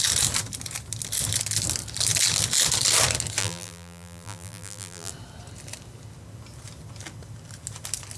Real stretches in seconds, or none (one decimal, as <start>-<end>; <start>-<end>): 0.0-3.4; 5.1-8.2